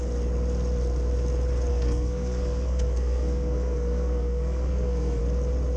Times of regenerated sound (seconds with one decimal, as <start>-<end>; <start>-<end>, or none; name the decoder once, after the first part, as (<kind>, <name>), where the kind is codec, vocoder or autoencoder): 1.7-5.2 (codec, SNAC)